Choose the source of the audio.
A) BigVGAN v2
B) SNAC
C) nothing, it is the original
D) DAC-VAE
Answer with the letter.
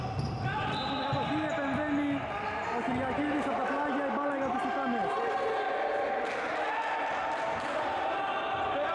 C